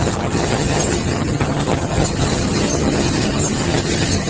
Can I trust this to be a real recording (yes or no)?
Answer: no